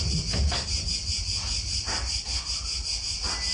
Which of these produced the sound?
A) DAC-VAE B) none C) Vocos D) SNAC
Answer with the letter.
B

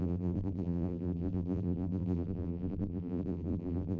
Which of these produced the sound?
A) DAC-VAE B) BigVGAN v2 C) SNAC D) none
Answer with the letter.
B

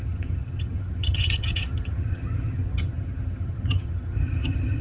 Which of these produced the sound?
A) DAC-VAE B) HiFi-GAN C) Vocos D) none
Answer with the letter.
B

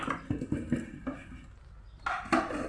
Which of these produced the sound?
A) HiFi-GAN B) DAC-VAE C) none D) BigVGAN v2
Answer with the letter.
C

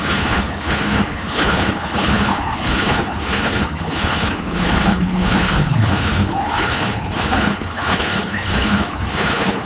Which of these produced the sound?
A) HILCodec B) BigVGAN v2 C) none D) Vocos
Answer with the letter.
A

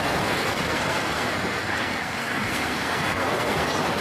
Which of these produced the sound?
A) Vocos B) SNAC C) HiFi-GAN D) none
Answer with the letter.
B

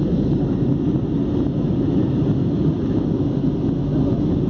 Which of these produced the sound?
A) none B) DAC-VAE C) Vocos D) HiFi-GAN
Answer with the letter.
A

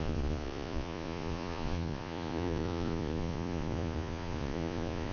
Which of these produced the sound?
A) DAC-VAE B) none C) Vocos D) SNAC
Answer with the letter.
C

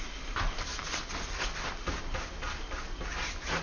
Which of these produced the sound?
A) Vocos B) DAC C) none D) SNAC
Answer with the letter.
C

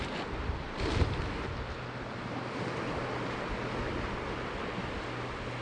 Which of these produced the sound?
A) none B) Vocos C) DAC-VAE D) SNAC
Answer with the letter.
A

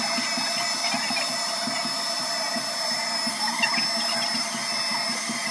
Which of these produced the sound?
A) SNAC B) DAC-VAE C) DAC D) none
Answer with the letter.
D